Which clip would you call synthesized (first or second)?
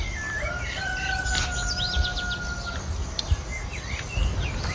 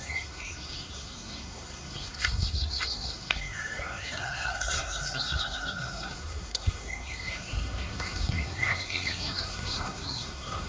second